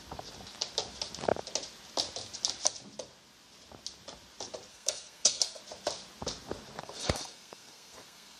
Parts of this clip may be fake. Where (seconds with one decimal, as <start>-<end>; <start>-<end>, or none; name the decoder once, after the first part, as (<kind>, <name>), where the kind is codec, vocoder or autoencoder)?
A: 4.7-5.6 (codec, SNAC); 6.8-8.4